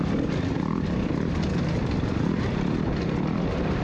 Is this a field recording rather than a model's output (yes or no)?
yes